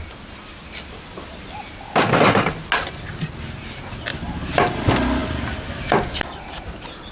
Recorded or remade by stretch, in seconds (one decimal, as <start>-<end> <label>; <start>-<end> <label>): 0.0-7.1 recorded